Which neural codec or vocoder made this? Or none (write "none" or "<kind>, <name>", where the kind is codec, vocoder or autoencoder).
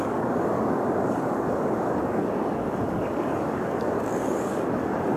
codec, DAC